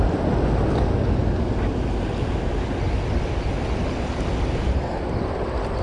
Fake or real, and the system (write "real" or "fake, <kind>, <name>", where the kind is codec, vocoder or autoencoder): real